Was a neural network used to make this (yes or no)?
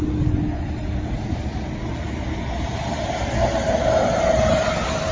no